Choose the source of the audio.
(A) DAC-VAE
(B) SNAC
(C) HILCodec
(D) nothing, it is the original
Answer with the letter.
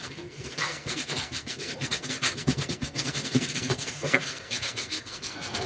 B